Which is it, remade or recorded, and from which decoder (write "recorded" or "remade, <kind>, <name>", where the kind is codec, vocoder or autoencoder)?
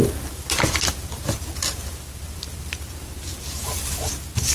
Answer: recorded